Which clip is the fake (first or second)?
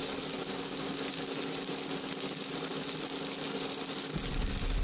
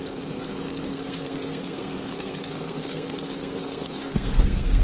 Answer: second